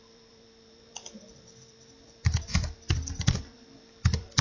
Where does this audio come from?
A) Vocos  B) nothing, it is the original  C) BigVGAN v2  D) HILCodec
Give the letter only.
C